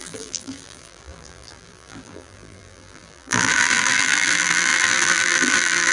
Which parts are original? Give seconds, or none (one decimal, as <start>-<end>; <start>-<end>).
none